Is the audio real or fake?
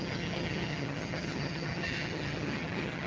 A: fake